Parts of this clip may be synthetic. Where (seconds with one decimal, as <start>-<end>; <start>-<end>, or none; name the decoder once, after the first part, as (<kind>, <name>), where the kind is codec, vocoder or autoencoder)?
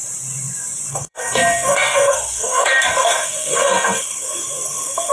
0.9-5.1 (codec, SNAC)